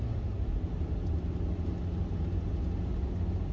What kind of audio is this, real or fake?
real